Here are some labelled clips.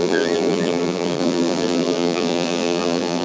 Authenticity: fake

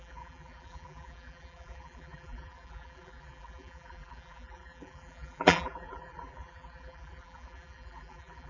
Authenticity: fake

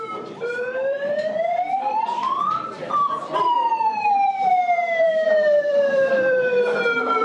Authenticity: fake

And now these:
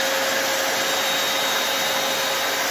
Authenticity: real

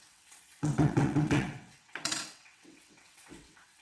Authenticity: fake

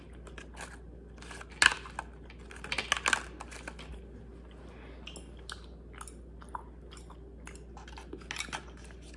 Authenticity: real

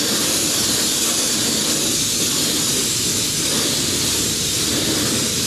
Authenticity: fake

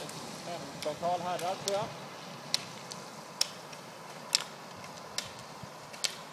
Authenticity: real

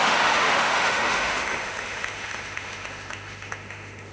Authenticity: fake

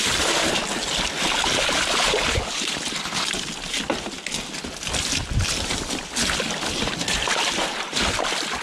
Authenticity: real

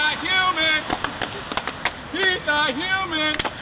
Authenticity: real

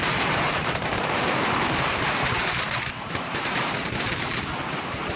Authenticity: fake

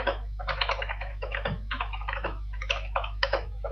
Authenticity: fake